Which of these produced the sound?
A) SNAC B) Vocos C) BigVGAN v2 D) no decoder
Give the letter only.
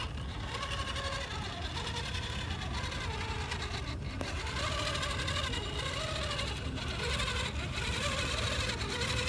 D